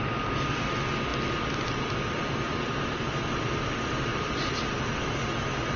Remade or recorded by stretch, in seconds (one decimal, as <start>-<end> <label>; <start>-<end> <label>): 0.0-5.8 recorded